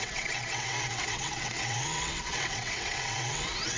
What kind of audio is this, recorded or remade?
remade